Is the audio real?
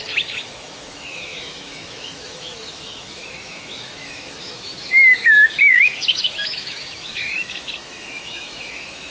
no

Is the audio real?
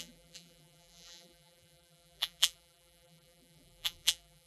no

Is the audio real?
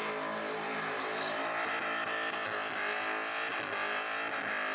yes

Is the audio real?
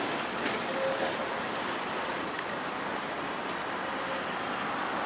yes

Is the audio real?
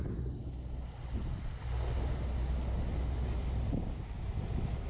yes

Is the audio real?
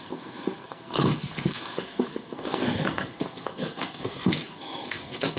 no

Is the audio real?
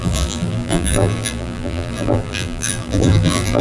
no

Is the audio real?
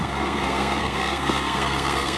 no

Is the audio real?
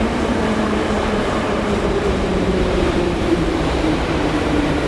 no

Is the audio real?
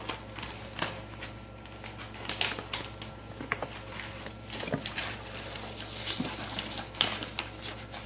yes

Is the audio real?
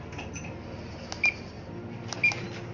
yes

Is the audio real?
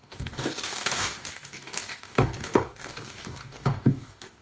no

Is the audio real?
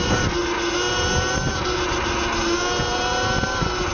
yes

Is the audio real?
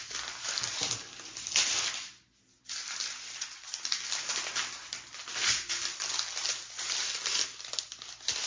yes